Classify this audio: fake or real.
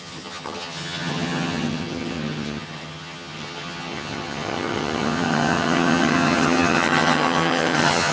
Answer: fake